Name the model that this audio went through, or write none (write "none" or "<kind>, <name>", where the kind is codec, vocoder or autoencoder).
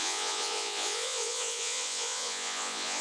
vocoder, Vocos